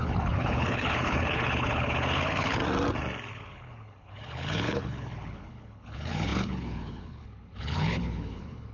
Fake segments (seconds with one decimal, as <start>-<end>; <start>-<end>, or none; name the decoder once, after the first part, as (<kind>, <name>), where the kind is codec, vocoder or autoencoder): 0.0-2.6 (codec, HILCodec); 3.3-8.7